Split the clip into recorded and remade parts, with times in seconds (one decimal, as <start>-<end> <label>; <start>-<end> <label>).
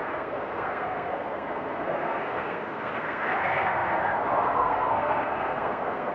0.0-6.1 remade